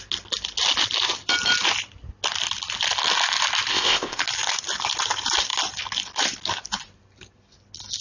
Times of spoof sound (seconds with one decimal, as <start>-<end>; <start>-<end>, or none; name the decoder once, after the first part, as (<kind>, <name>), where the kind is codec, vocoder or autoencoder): 3.7-4.2 (codec, ZipCodec)